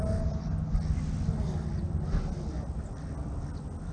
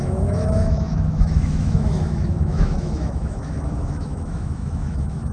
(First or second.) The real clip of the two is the first